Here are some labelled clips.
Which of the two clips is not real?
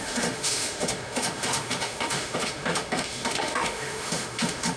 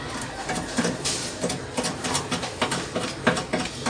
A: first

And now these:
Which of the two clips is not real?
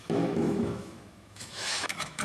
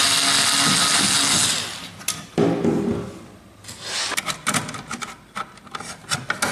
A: first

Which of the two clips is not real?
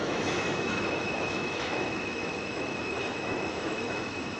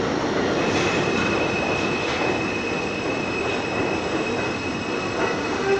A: first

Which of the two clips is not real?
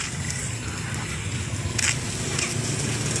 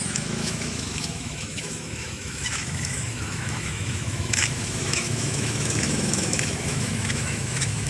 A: second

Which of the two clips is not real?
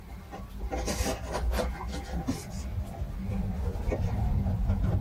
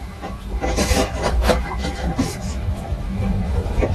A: second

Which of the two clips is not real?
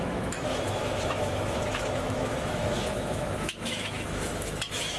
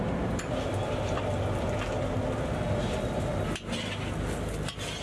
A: first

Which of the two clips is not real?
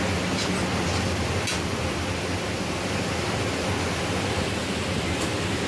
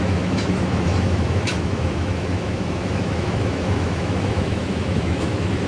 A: second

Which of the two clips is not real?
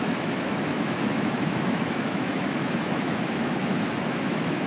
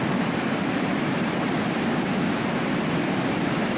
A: first